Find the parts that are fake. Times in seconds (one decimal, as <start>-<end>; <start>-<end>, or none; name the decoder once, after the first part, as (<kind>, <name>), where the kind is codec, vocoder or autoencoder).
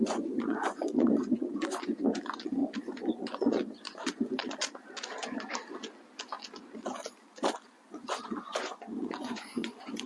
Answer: 0.0-2.6 (vocoder, Vocos); 3.1-4.4; 7.7-10.1